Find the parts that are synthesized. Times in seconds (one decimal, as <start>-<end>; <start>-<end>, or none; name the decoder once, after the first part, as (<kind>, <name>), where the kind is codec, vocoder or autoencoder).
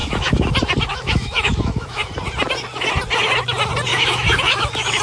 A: 0.0-0.5 (autoencoder, DAC-VAE); 0.9-2.1; 3.9-5.0